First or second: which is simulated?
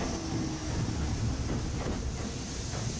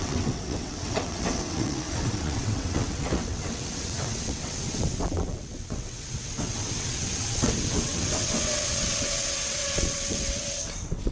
second